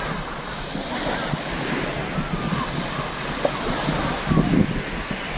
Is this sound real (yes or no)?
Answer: yes